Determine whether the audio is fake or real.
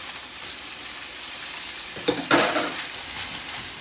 real